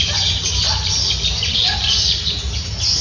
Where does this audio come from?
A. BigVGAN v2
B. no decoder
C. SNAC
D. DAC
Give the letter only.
B